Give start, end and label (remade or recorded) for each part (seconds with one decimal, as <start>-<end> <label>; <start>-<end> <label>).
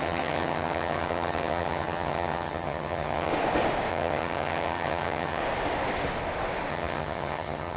0.0-3.3 remade; 3.3-3.9 recorded; 3.9-5.4 remade; 5.4-6.7 recorded; 6.7-7.8 remade